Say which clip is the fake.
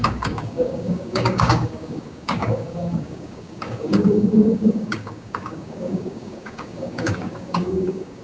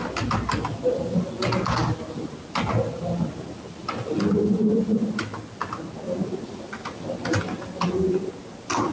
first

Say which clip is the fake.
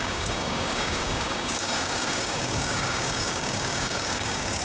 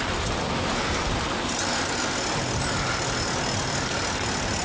first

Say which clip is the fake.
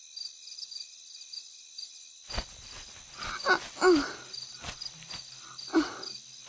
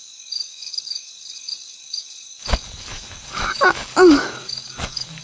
second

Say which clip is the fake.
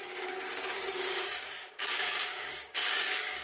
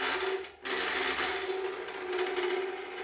first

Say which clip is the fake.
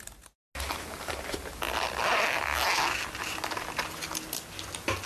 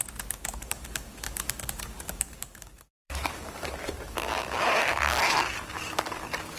second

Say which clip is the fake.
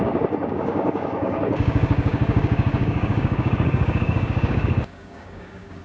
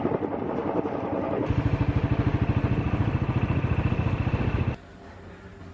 first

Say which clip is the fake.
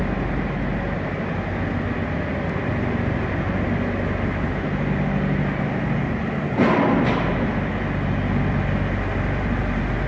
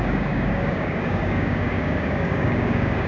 second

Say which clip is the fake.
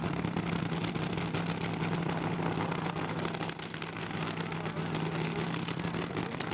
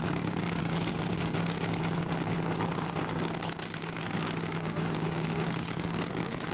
second